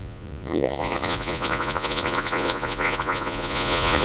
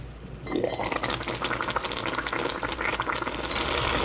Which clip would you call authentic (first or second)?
second